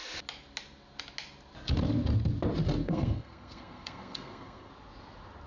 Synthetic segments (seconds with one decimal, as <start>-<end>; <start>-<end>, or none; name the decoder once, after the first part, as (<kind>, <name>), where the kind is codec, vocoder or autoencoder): 2.8-4.7 (codec, SNAC)